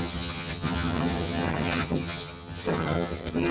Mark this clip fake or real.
fake